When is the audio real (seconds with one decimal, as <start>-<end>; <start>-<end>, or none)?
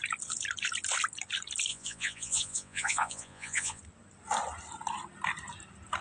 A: 0.0-1.7; 3.8-6.0